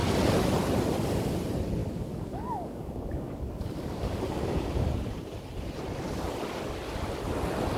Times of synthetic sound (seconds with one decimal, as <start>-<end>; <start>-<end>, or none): 1.8-5.0